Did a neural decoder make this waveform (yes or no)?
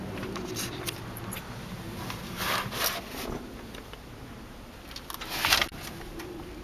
no